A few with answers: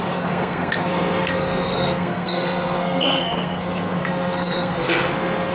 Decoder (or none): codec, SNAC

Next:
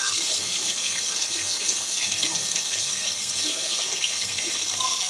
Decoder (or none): codec, SNAC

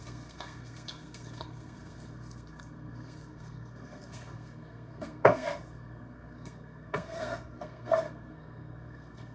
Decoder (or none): codec, SNAC